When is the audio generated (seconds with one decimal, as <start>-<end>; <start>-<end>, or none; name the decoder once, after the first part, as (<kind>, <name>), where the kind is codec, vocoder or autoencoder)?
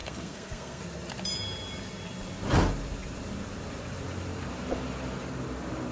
0.0-0.8 (codec, SNAC)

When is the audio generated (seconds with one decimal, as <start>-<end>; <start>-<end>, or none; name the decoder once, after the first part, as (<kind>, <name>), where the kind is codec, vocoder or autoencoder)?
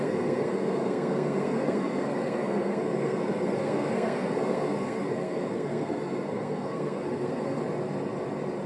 0.0-7.6 (codec, SNAC)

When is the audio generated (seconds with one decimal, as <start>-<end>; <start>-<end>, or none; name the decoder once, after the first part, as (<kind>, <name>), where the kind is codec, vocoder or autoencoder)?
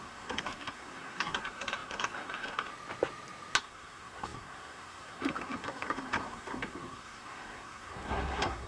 0.0-2.7 (codec, SNAC); 3.6-8.7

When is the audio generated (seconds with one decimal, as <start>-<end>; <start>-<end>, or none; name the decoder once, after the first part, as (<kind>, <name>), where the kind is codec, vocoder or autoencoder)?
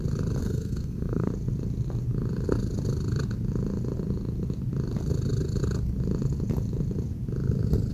0.4-1.3 (codec, SNAC)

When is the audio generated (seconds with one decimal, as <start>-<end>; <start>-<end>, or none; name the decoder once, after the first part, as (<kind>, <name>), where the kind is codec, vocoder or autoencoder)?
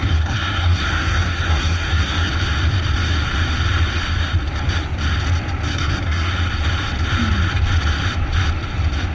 0.0-2.3 (codec, SNAC); 5.7-6.3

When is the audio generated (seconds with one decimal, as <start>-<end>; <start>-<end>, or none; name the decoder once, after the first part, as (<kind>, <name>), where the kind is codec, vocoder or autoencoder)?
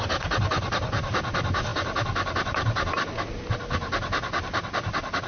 none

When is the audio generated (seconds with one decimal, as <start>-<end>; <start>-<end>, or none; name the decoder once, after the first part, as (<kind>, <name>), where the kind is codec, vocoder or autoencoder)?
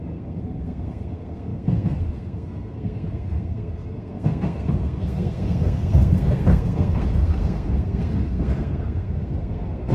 0.0-9.9 (codec, SNAC)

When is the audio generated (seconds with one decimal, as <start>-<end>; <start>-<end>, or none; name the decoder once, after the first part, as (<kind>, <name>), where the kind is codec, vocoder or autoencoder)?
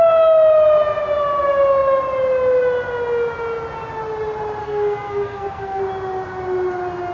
4.6-5.8 (codec, SNAC)